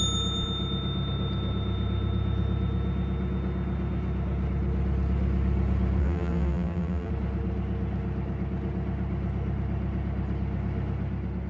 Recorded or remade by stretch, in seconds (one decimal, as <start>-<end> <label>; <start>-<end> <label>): 0.0-6.0 recorded; 6.0-7.1 remade; 7.1-11.5 recorded

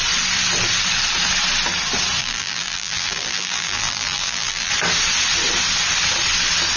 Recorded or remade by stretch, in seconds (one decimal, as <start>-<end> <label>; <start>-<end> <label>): 0.0-2.2 recorded; 2.2-4.7 remade; 4.7-6.8 recorded